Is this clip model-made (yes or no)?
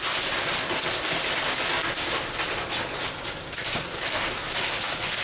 no